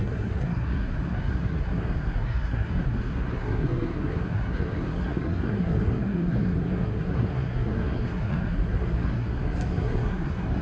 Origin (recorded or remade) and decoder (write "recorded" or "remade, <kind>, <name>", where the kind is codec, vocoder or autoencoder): remade, codec, SNAC